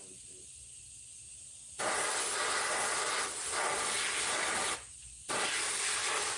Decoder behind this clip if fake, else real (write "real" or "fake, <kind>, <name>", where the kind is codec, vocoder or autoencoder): real